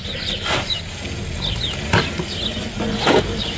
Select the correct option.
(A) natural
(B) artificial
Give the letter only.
A